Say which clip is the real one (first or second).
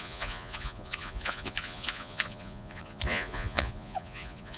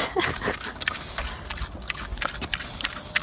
second